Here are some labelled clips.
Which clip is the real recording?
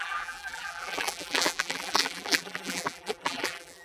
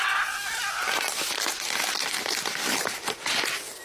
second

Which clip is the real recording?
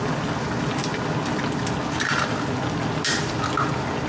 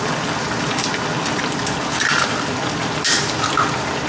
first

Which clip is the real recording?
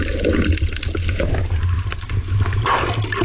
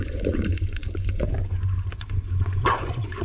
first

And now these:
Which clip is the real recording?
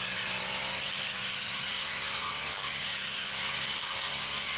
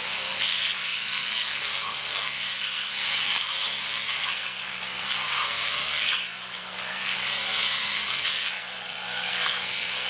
first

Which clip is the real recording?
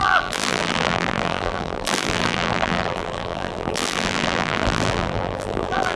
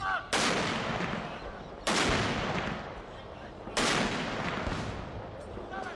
second